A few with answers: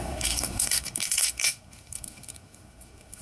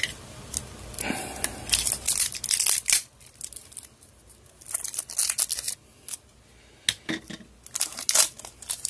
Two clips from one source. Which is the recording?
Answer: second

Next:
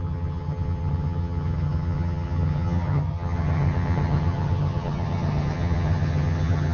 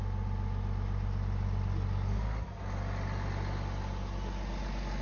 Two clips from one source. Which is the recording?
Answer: second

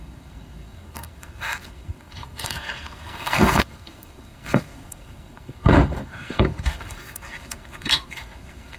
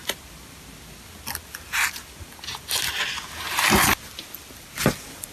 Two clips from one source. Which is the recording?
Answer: second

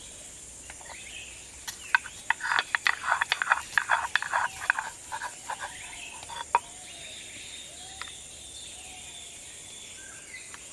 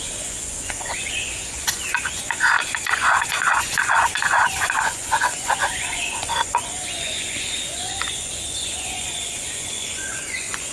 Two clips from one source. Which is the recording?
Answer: first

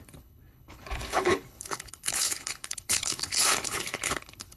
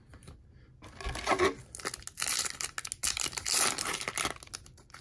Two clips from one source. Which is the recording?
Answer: second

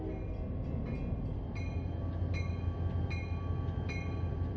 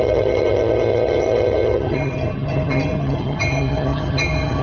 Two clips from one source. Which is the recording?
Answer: first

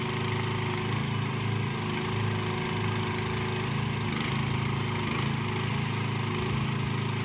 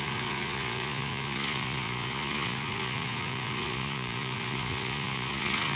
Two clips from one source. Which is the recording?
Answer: first